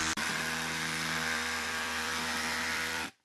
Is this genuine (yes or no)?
no